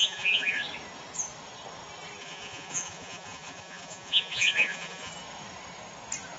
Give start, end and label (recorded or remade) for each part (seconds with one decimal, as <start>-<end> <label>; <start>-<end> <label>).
0.0-0.6 remade; 0.6-2.2 recorded; 2.2-5.1 remade; 5.1-6.4 recorded